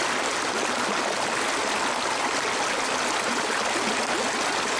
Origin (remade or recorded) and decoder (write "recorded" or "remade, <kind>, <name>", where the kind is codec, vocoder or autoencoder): recorded